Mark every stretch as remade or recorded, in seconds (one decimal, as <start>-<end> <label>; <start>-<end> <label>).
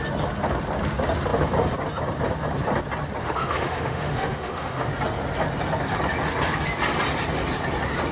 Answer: 0.0-3.2 recorded; 3.2-4.9 remade; 4.9-8.1 recorded